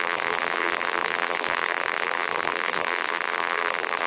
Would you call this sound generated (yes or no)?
yes